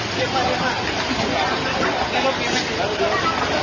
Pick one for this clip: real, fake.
real